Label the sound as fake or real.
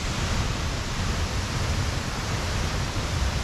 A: fake